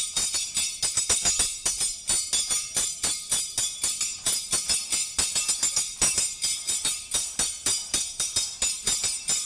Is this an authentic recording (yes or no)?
yes